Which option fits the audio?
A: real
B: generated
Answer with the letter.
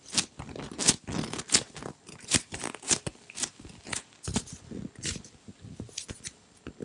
A